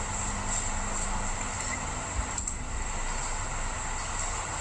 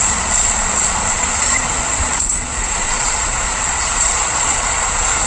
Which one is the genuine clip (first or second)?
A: first